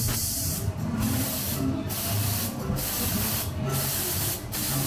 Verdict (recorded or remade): recorded